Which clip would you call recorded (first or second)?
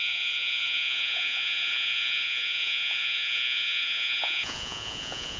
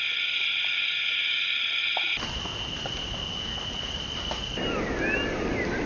second